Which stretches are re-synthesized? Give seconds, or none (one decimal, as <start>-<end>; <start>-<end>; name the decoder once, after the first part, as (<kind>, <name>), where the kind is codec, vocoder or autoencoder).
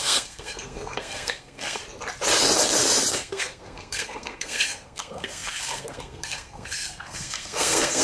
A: 0.0-1.8 (codec, SNAC); 3.1-8.0